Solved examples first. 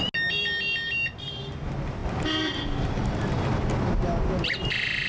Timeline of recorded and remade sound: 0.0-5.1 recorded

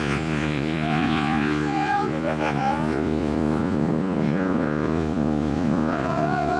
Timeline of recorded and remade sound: 0.0-6.6 remade

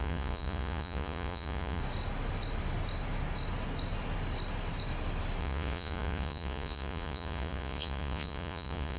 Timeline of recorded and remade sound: 0.0-1.8 remade; 1.8-5.4 recorded; 5.4-9.0 remade

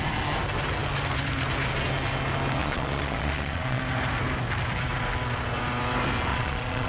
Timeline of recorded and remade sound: 0.0-2.6 recorded; 2.6-3.8 remade; 3.8-6.3 recorded; 6.3-6.9 remade